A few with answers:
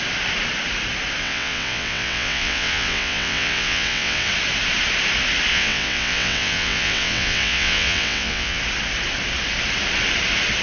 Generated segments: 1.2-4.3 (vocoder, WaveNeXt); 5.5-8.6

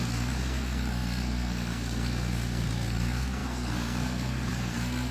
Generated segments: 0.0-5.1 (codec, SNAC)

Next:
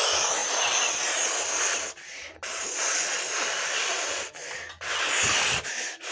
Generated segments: none